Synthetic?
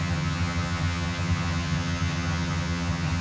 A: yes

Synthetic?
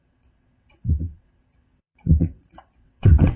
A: yes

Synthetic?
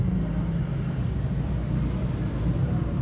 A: no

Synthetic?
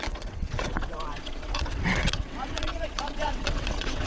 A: yes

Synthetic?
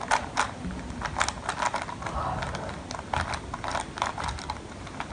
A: no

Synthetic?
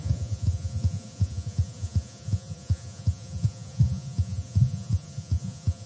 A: yes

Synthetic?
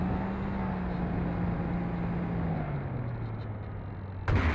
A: no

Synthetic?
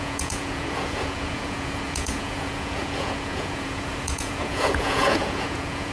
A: yes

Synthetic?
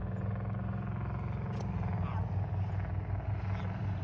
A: no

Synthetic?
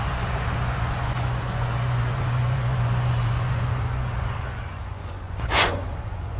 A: yes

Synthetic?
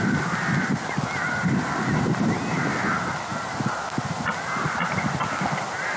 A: no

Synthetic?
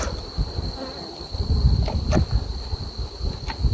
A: no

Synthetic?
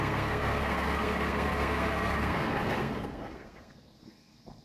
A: yes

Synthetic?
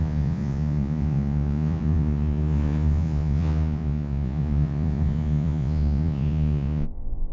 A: yes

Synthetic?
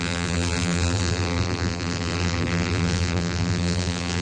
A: yes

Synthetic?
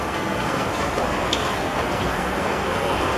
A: yes